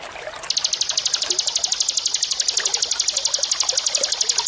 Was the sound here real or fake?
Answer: real